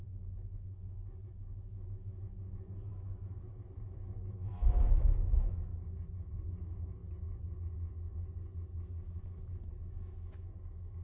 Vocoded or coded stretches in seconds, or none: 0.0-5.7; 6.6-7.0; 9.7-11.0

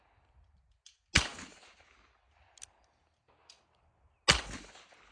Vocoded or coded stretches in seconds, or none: none

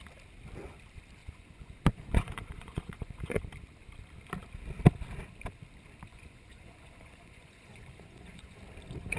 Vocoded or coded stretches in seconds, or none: 1.2-3.4; 6.1-8.6

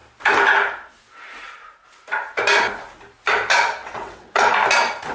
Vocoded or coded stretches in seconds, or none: 3.8-4.5